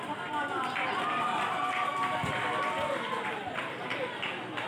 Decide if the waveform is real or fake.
real